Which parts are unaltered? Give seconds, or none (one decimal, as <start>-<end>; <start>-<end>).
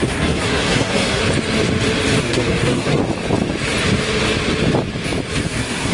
1.2-2.2; 3.0-5.5